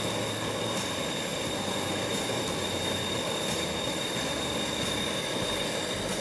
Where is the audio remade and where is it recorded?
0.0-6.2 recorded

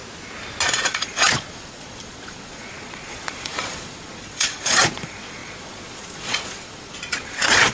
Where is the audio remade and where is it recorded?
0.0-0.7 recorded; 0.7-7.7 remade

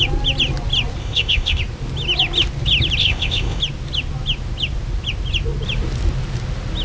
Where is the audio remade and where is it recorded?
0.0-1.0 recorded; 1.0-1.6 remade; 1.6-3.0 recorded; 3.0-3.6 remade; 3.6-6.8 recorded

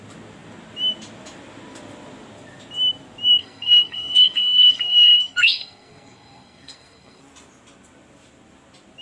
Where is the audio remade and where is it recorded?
0.0-3.4 recorded; 3.4-7.2 remade; 7.2-9.0 recorded

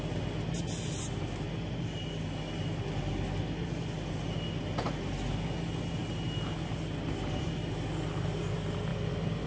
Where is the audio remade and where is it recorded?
0.0-9.5 recorded

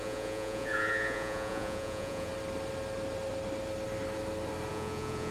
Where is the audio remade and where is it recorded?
0.0-2.3 remade; 2.3-4.7 recorded; 4.7-5.3 remade

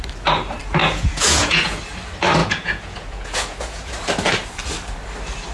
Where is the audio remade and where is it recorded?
0.0-0.8 recorded; 0.8-1.8 remade; 1.8-2.4 recorded; 2.4-3.9 remade; 3.9-5.5 recorded